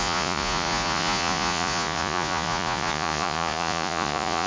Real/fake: fake